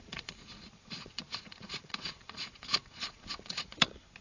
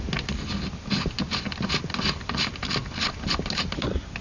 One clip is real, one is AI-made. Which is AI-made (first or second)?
first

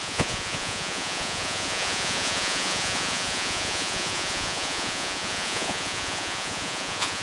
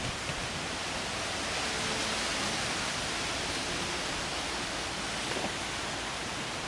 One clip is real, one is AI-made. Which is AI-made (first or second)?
first